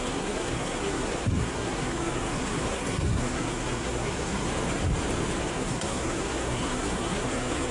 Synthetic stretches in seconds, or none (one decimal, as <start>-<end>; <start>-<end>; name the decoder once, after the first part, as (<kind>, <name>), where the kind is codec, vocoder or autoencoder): 0.0-4.5 (codec, SNAC); 5.4-7.7